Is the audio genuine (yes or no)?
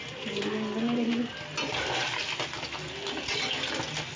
yes